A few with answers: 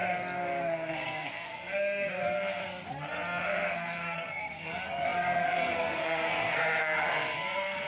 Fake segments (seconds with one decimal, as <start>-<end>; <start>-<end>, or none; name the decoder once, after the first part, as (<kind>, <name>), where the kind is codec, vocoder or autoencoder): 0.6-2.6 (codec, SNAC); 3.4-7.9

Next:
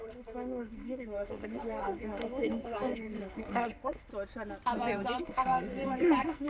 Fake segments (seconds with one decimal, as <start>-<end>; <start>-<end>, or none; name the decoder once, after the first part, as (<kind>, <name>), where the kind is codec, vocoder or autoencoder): 0.0-4.1 (codec, SNAC); 5.2-6.5

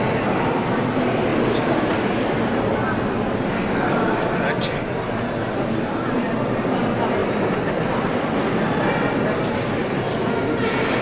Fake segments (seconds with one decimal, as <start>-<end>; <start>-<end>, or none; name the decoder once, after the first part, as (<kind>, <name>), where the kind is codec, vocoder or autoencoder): none

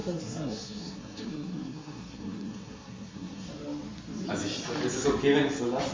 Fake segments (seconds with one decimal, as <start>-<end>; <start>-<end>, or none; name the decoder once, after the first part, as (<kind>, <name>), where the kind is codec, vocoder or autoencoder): 0.0-3.5 (codec, SNAC)